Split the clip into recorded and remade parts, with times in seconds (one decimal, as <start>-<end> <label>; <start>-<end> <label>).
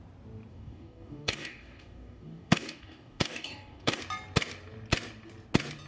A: 0.0-0.5 recorded; 0.5-4.0 remade; 4.0-5.9 recorded